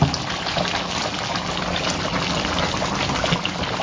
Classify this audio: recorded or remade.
recorded